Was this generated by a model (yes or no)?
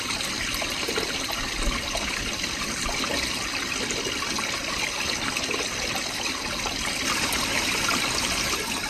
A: no